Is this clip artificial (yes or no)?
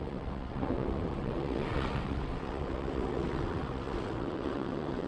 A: yes